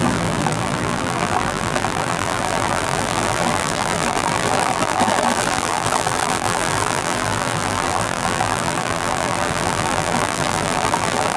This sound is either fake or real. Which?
fake